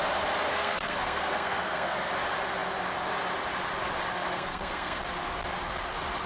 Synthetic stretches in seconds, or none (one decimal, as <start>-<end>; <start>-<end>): 0.5-2.1; 4.3-5.0